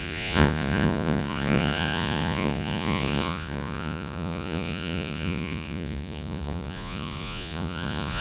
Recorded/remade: remade